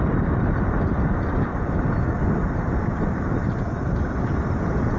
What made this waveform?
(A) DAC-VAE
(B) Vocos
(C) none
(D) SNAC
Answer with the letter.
C